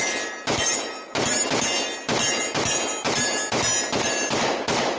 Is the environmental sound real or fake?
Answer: real